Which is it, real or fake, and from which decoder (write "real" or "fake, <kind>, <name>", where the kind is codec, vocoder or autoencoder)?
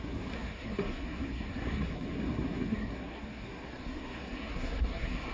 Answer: fake, codec, SNAC